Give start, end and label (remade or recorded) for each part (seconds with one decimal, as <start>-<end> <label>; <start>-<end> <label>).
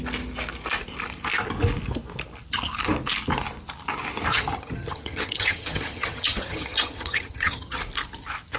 0.0-4.3 recorded; 4.3-7.8 remade; 7.8-8.6 recorded